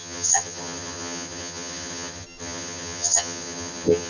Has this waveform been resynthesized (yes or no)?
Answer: yes